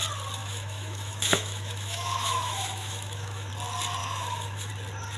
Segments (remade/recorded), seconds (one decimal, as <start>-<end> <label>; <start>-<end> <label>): 0.0-0.4 recorded; 0.4-3.5 remade; 3.5-4.0 recorded; 4.0-4.7 remade; 4.7-5.2 recorded